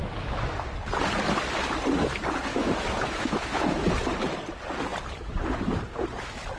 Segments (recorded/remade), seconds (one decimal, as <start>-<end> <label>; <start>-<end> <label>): 0.0-2.5 recorded; 2.5-3.9 remade; 3.9-6.6 recorded